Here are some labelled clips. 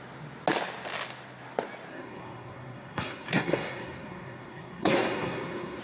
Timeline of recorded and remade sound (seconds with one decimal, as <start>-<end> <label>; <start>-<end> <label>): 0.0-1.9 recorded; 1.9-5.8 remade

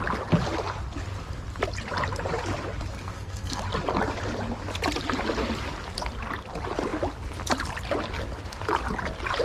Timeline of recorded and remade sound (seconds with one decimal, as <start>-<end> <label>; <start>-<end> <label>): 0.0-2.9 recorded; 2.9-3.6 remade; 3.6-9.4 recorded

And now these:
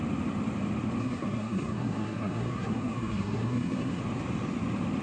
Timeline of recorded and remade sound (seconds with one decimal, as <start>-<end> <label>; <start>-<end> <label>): 0.0-1.0 recorded; 1.0-4.0 remade; 4.0-5.0 recorded

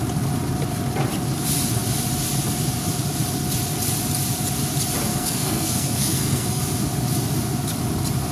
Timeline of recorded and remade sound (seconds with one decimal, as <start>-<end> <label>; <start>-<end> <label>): 0.0-5.1 recorded; 5.1-6.6 remade; 6.6-8.3 recorded

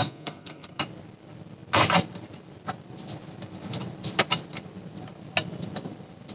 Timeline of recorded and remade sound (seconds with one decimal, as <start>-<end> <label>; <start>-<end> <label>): 0.0-0.8 remade; 0.8-6.3 recorded

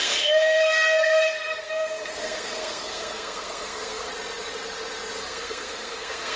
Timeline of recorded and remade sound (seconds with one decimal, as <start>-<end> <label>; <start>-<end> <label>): 0.0-4.1 remade; 4.1-5.2 recorded; 5.2-6.4 remade